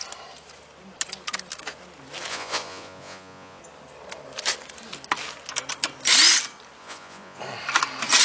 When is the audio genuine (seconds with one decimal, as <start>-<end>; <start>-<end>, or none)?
0.0-2.3; 3.6-6.8; 7.4-8.2